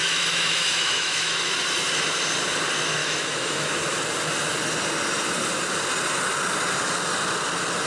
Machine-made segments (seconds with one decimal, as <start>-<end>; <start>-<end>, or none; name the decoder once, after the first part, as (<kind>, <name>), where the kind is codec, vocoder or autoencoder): 0.0-1.5 (autoencoder, DAC-VAE); 3.0-3.7